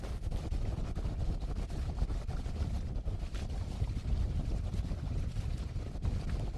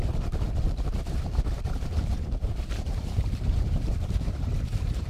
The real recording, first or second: first